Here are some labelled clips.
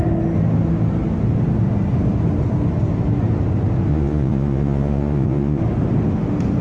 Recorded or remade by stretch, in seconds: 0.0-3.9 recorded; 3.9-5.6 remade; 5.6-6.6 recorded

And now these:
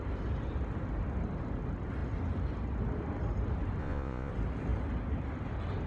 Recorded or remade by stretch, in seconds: 0.0-3.8 recorded; 3.8-4.3 remade; 4.3-5.9 recorded

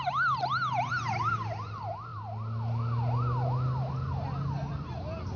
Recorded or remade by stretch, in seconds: 0.0-5.4 recorded